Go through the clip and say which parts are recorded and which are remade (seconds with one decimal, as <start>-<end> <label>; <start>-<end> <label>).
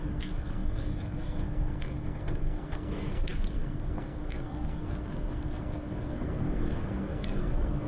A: 0.0-7.9 remade